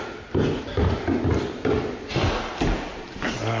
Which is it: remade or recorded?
recorded